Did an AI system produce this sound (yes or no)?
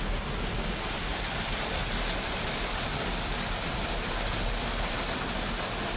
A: no